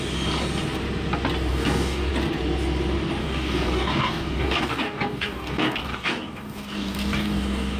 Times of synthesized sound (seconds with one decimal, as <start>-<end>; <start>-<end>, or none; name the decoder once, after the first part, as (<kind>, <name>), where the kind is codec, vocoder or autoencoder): 1.5-2.1 (codec, DAC); 3.2-7.8